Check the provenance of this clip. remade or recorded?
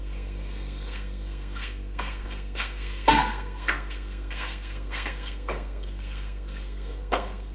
remade